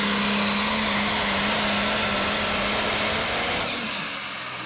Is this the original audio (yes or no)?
yes